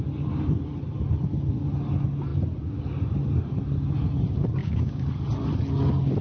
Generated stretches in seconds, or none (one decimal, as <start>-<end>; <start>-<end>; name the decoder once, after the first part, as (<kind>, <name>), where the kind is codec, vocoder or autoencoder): 4.6-5.1 (codec, DAC)